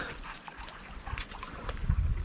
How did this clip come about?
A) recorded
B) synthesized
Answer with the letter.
B